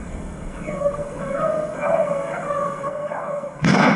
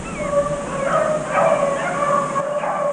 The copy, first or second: first